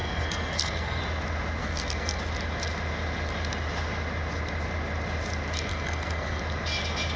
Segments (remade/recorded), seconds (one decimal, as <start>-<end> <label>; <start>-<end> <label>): 0.0-1.0 remade; 1.0-1.6 recorded; 1.6-2.2 remade; 2.2-5.7 recorded; 5.7-6.4 remade; 6.4-7.2 recorded

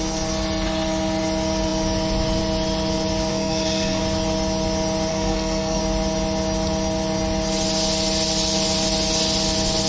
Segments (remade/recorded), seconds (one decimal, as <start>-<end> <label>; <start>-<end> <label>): 0.0-3.3 recorded; 3.3-4.0 remade; 4.0-5.1 recorded; 5.1-5.8 remade; 5.8-9.9 recorded

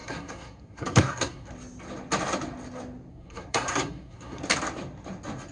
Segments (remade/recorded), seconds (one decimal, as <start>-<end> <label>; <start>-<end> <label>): 0.0-1.5 remade; 1.5-3.1 recorded; 3.1-4.4 remade; 4.4-5.5 recorded

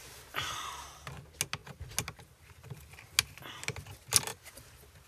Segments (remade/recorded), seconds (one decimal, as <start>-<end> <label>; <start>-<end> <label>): 0.0-5.1 recorded